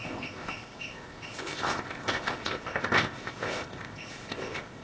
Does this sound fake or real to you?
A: fake